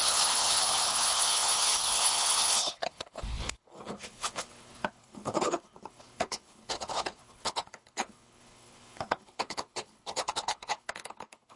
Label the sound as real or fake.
fake